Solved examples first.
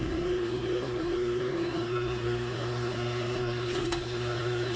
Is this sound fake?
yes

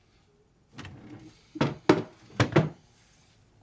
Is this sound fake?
no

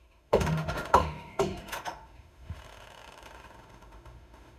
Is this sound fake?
yes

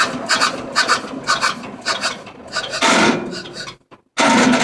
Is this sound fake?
no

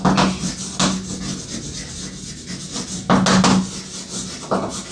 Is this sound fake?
no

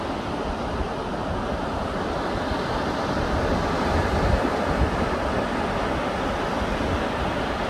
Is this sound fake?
no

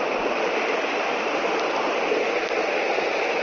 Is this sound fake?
no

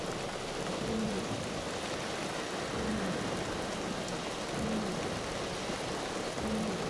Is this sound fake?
no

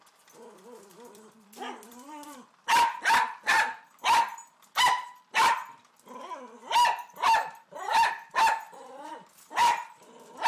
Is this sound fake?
yes